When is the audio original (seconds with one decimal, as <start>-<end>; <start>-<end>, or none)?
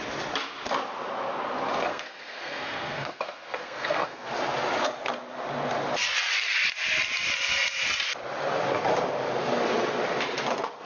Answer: 0.0-1.9; 4.3-10.9